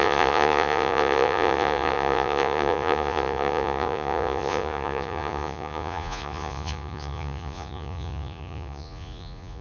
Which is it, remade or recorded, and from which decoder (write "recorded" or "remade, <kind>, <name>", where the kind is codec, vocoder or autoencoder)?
remade, vocoder, Vocos